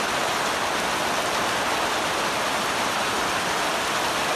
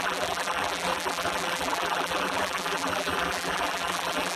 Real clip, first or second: first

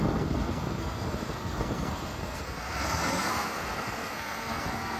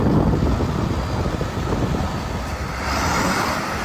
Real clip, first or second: second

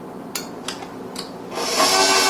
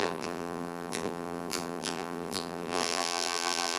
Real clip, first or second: first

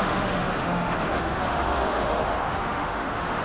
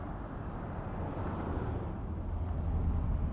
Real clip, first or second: second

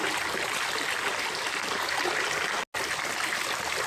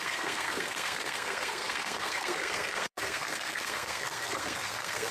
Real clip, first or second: first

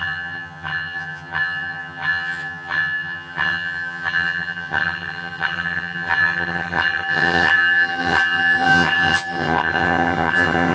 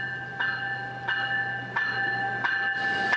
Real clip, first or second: second